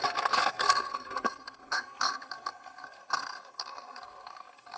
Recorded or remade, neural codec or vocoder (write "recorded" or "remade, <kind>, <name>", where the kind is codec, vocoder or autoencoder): remade, codec, SNAC